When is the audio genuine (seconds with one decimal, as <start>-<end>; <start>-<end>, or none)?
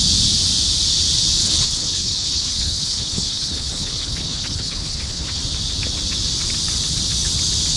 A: 0.0-1.4; 5.4-7.8